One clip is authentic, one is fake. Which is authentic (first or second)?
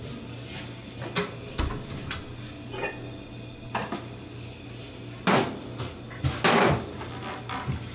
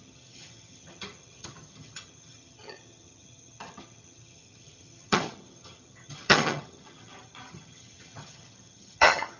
first